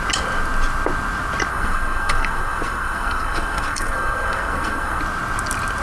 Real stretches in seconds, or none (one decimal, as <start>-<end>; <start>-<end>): 0.0-1.5; 5.0-5.8